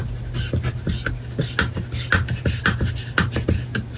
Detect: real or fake real